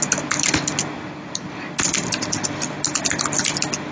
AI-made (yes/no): no